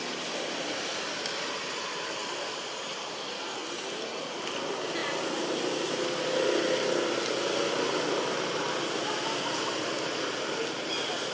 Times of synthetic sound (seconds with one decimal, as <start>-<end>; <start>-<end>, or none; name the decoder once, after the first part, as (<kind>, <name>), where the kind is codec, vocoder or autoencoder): none